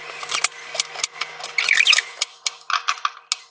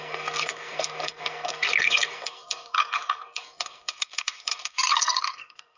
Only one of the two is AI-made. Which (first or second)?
second